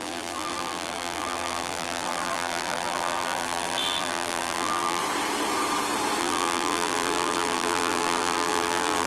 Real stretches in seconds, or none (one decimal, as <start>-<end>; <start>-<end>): 5.0-6.2